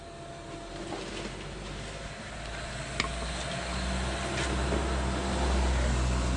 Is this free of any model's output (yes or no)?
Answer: yes